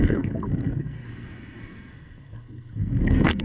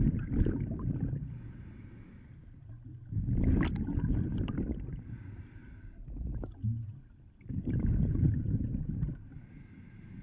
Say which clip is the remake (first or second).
first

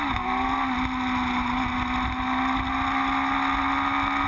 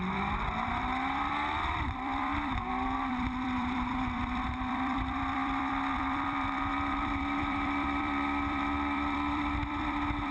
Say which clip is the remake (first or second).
second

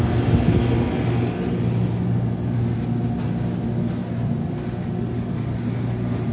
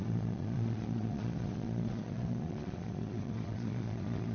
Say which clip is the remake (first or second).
second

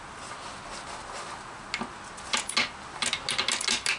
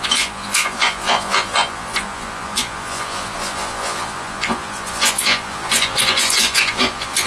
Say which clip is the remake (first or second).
second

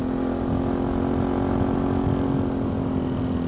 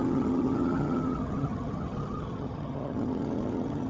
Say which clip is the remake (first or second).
second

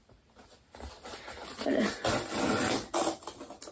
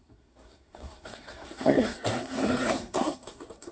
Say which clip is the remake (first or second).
second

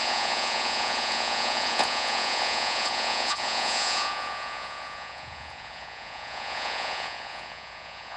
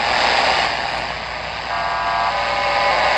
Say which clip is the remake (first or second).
first